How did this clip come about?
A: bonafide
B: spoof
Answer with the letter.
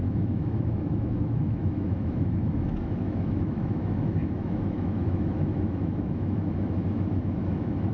B